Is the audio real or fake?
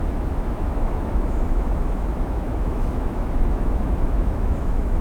fake